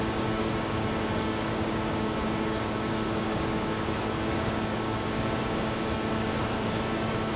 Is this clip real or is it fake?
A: fake